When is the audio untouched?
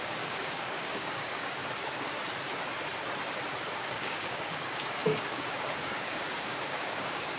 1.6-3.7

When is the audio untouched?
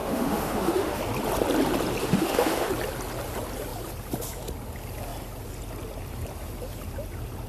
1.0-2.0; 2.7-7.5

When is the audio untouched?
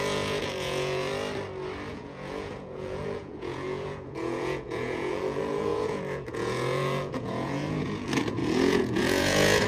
1.1-1.9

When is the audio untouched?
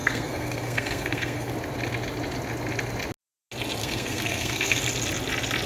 1.5-3.8; 4.8-5.7